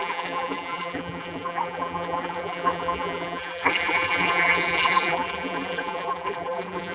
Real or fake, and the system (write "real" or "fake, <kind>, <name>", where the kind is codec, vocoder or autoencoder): fake, vocoder, BigVGAN v2